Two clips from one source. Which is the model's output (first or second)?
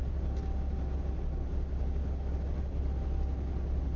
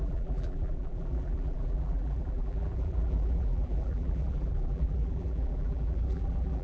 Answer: second